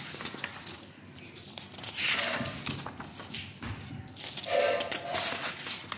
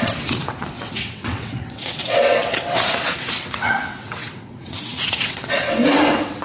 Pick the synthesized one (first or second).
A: second